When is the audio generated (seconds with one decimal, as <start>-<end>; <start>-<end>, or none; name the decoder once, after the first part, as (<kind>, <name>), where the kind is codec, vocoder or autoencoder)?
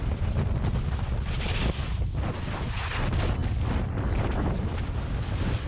none